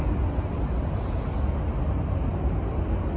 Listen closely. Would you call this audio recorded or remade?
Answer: recorded